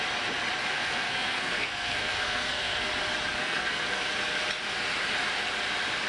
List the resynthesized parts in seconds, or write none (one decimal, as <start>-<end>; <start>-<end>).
0.6-2.9; 3.4-4.0